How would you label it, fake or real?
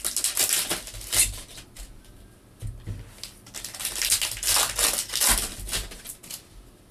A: real